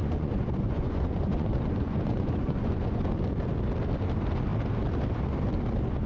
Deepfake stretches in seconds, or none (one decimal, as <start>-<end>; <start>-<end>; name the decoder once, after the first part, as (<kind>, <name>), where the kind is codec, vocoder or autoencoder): 0.0-3.0 (vocoder, Vocos)